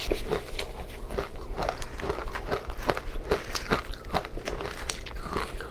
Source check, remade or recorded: recorded